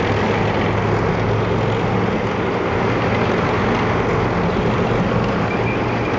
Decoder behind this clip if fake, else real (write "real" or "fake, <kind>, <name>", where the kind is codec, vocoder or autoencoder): real